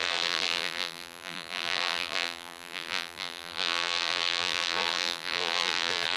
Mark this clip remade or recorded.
remade